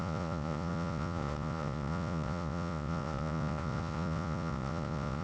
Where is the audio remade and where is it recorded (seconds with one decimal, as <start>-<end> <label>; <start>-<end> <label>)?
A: 0.0-5.2 remade